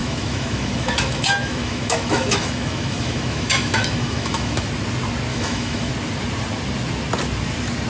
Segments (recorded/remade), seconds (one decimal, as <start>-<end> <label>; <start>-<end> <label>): 0.0-4.7 remade; 4.7-5.3 recorded; 5.3-5.9 remade; 5.9-7.9 recorded